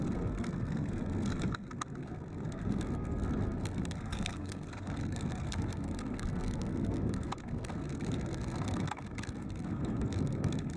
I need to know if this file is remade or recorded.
remade